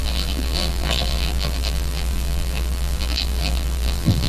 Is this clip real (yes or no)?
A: no